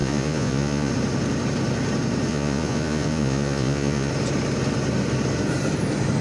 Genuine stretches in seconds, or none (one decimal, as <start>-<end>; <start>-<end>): 0.9-2.3; 4.1-6.2

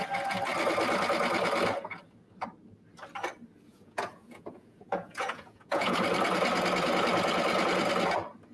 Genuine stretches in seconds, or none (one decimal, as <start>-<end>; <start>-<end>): 0.0-3.7; 6.0-8.5

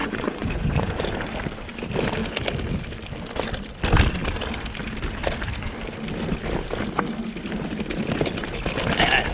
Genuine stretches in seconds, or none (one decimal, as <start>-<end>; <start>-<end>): 1.0-9.3